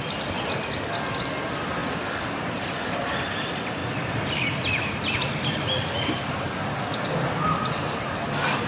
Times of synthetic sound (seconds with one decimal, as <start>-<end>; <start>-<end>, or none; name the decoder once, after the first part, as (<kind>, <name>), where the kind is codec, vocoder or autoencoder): 1.8-2.4 (vocoder, BigVGAN v2); 3.8-5.3